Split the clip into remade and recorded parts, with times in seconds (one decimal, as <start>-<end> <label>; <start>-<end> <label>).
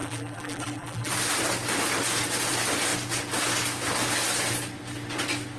0.0-1.1 remade; 1.1-5.6 recorded